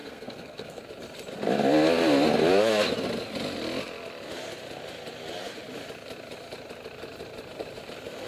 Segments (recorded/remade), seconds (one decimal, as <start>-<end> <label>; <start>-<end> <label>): 0.0-0.8 remade; 0.8-8.3 recorded